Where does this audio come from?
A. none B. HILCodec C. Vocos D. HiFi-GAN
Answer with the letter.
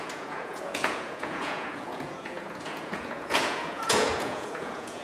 C